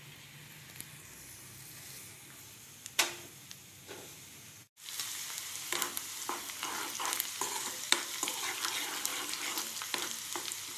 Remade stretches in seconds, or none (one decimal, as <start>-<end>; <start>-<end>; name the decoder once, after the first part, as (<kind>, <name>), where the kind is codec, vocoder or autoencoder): none